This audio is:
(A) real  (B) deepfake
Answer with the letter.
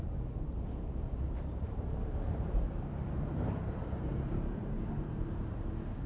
B